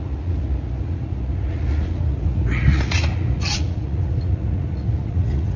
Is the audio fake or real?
fake